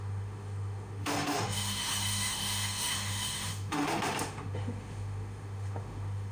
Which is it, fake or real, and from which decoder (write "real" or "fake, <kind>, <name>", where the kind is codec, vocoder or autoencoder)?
fake, autoencoder, DAC-VAE